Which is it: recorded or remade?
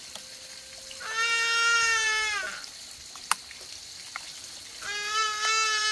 recorded